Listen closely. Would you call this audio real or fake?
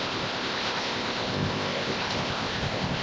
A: fake